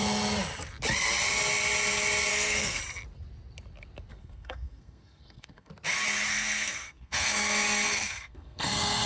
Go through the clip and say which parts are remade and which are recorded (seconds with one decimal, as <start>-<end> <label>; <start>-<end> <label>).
0.0-2.3 recorded; 2.3-2.8 remade; 2.8-4.1 recorded; 4.1-5.7 remade; 5.7-6.3 recorded; 6.3-9.1 remade